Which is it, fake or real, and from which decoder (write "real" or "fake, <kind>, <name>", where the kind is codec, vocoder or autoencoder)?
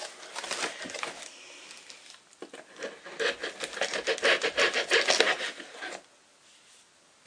real